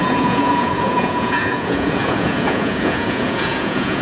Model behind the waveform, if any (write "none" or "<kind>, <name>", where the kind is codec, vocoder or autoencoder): vocoder, Vocos